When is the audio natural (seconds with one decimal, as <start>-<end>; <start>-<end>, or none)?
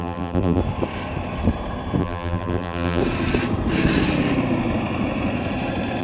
0.6-2.0; 3.0-6.0